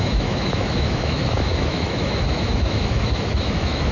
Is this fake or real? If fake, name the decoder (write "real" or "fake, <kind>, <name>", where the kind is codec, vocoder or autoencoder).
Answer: fake, autoencoder, DAC-VAE